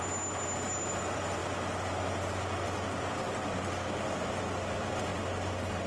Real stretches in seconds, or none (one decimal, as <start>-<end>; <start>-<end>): 0.0-5.9